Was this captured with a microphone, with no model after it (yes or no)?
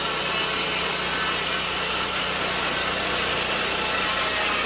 yes